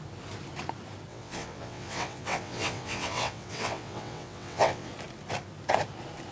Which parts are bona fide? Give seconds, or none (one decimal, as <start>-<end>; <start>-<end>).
0.0-1.1; 4.9-6.3